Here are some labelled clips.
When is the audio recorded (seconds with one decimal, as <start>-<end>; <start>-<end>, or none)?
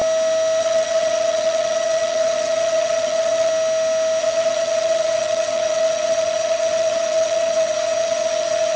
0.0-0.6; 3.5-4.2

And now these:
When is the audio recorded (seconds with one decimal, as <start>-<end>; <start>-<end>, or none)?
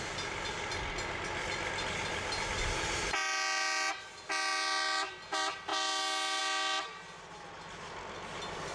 0.0-8.7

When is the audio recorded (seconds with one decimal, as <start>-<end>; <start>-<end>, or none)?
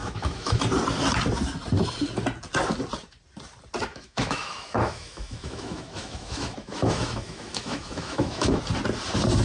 0.6-3.9; 8.6-9.4